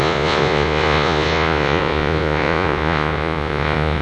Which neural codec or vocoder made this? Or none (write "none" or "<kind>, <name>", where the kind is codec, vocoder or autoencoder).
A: vocoder, Vocos